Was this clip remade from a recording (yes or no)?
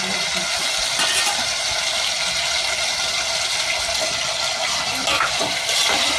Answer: no